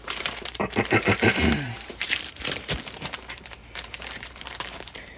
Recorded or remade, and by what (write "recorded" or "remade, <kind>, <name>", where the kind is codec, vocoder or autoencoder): remade, vocoder, BigVGAN v2